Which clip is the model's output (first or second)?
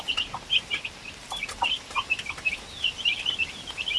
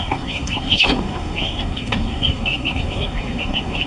second